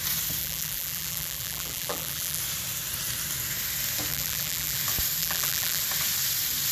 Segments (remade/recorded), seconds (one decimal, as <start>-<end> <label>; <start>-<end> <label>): 0.0-0.4 recorded; 0.4-2.4 remade; 2.4-4.1 recorded; 4.1-4.8 remade; 4.8-5.2 recorded; 5.2-5.8 remade; 5.8-6.7 recorded